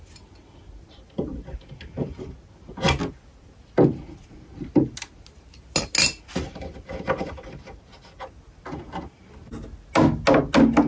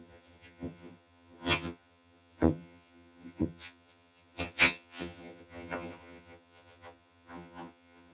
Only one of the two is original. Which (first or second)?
first